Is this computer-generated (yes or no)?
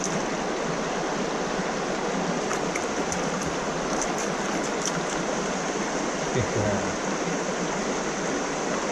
no